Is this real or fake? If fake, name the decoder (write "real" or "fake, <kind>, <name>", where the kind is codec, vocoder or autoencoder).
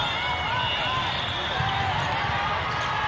real